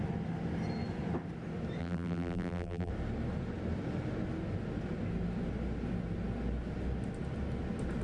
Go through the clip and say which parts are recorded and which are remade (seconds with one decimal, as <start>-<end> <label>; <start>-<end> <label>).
0.0-1.8 recorded; 1.8-2.9 remade; 2.9-8.0 recorded